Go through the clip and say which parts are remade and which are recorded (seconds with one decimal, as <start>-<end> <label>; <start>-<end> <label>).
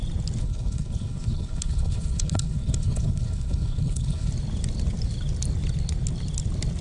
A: 0.0-0.4 recorded; 0.4-4.3 remade; 4.3-6.8 recorded